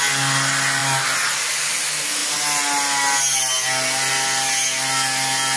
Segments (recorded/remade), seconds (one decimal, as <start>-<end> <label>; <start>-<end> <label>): 0.0-5.6 recorded